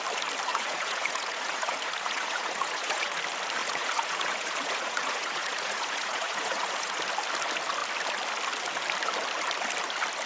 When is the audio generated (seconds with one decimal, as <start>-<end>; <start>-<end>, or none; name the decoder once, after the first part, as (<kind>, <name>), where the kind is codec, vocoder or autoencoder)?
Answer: 0.5-3.2 (vocoder, Vocos); 3.6-7.0